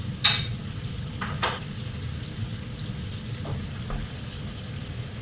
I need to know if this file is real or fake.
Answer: real